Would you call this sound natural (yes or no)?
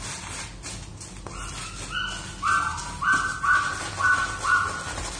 yes